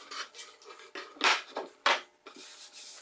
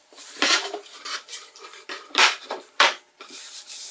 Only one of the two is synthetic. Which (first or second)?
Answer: second